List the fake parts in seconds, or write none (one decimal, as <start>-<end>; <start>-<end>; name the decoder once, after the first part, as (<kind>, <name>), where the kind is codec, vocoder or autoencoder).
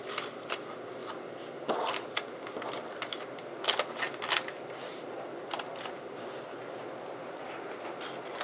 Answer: none